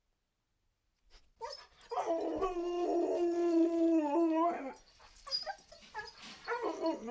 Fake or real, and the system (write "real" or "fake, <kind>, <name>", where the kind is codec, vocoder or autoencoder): real